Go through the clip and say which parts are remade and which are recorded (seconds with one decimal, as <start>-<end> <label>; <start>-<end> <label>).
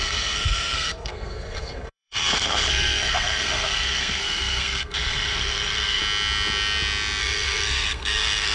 0.0-6.0 remade; 6.0-7.2 recorded; 7.2-8.5 remade